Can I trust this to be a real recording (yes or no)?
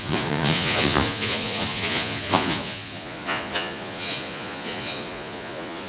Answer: no